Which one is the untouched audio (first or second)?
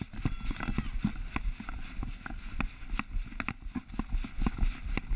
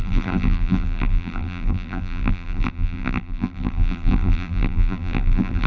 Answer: first